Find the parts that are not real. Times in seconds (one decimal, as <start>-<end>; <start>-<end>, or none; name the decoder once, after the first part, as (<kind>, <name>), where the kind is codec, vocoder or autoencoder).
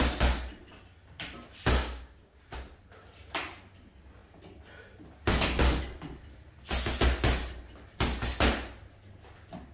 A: 1.8-2.4 (codec, DAC)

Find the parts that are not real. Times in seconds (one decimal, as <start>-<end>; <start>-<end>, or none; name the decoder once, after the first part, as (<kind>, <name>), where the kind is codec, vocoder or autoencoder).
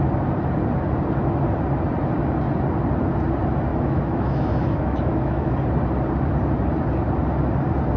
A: 3.7-5.5 (autoencoder, DAC-VAE)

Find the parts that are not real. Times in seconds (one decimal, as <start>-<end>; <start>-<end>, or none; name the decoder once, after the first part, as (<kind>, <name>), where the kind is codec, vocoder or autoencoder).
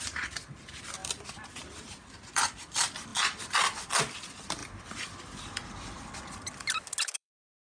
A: 0.0-4.6 (vocoder, BigVGAN v2); 7.0-7.7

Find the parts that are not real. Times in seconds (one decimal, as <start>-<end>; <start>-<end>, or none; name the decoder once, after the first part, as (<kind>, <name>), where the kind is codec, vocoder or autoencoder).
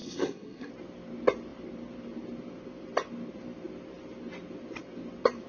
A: 0.0-0.7 (codec, SNAC)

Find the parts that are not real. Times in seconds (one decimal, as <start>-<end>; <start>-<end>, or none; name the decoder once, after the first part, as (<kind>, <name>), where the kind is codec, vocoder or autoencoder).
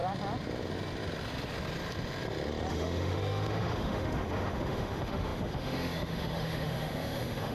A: 2.7-7.5 (autoencoder, DAC-VAE)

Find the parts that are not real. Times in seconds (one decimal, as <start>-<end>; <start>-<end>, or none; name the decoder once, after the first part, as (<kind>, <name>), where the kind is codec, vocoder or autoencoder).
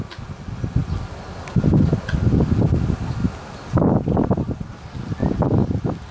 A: 3.2-3.9 (vocoder, BigVGAN v2); 5.2-6.1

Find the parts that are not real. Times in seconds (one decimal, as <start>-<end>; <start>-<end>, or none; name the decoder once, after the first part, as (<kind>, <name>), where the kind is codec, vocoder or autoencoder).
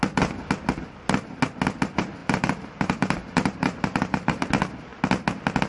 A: 2.2-4.4 (vocoder, BigVGAN v2)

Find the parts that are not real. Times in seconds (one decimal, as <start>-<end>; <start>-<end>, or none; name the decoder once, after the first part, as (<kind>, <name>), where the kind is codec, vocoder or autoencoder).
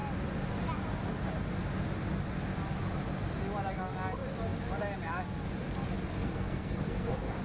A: 6.0-7.4 (codec, SNAC)